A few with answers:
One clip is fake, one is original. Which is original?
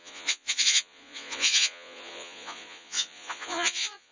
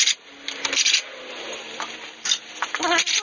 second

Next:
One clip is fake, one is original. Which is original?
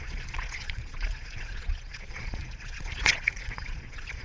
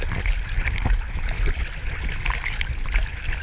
second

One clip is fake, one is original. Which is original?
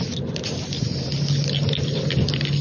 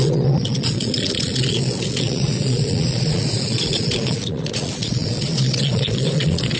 first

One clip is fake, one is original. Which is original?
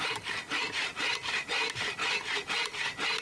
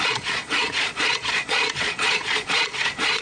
first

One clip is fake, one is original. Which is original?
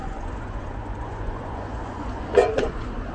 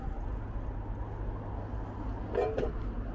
second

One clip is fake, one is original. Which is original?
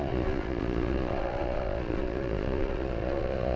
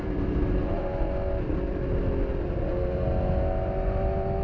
second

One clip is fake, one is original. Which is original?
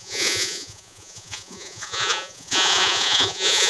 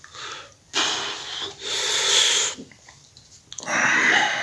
second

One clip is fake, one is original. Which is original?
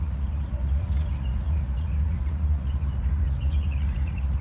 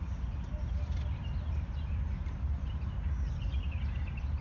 second